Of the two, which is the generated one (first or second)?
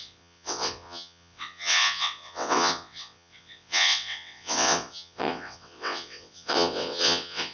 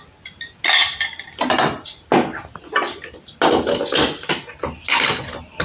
first